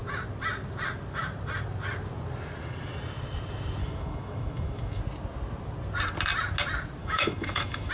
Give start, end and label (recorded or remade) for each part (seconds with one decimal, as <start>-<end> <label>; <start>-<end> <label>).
0.0-3.8 recorded; 3.8-5.0 remade; 5.0-7.0 recorded; 7.0-7.9 remade